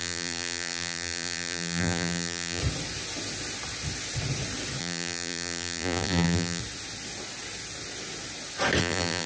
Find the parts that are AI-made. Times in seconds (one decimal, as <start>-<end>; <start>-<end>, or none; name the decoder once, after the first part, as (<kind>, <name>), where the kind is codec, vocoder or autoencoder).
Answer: 0.0-2.6 (vocoder, BigVGAN v2); 4.8-6.6; 8.8-9.3